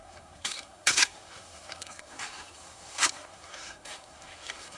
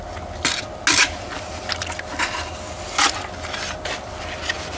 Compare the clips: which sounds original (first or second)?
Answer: second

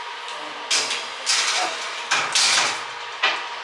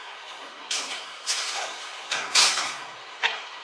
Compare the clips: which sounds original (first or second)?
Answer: first